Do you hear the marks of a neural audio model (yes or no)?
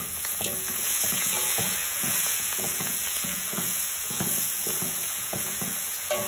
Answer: yes